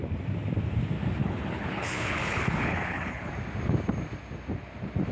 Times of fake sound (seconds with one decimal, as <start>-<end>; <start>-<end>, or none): 1.2-3.3